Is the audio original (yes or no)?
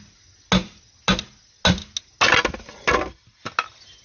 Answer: yes